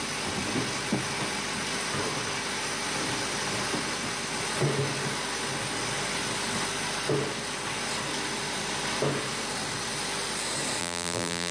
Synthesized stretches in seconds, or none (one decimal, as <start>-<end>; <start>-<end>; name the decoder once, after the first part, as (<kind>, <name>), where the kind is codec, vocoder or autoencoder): 10.8-11.5 (vocoder, BigVGAN v2)